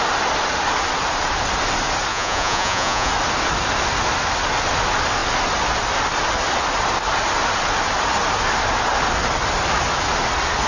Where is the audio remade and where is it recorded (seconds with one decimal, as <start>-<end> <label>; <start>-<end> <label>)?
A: 0.0-2.1 recorded; 2.1-3.1 remade; 3.1-10.7 recorded